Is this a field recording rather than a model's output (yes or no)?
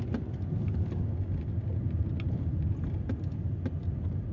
yes